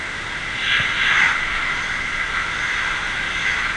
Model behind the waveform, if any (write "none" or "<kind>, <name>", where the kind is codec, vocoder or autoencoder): none